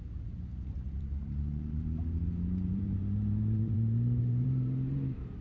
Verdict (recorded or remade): remade